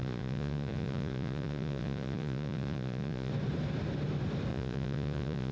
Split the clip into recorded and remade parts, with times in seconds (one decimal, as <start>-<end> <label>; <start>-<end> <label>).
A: 0.0-3.3 remade; 3.3-4.5 recorded; 4.5-5.5 remade